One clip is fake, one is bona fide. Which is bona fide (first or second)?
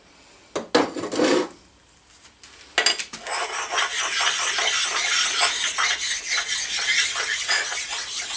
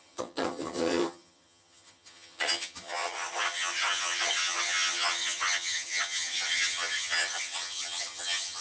first